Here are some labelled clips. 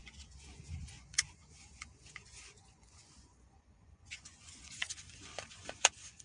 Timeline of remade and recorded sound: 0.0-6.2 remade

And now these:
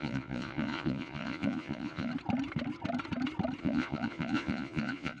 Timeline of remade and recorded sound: 0.0-2.1 remade; 2.1-3.6 recorded; 3.6-5.2 remade

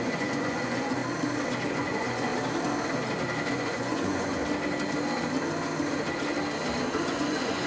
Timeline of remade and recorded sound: 0.0-1.0 remade; 1.0-1.7 recorded; 1.7-2.3 remade; 2.3-3.5 recorded; 3.5-4.4 remade; 4.4-7.1 recorded; 7.1-7.7 remade

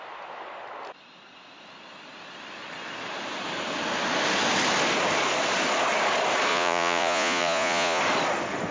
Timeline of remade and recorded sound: 0.0-6.5 recorded; 6.5-8.0 remade; 8.0-8.7 recorded

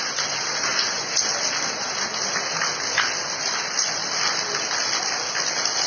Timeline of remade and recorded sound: 0.0-5.9 recorded

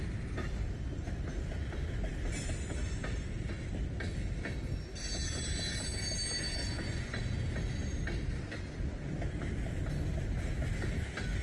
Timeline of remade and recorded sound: 0.0-6.6 recorded; 6.6-7.2 remade; 7.2-11.4 recorded

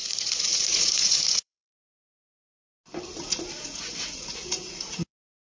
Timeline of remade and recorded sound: 0.0-2.5 remade; 2.5-3.5 recorded; 3.5-5.5 remade

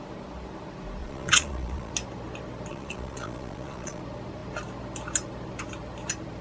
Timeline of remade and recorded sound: 0.0-1.0 recorded; 1.0-1.9 remade; 1.9-2.7 recorded; 2.7-4.0 remade; 4.0-6.4 recorded